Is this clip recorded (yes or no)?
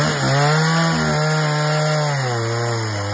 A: yes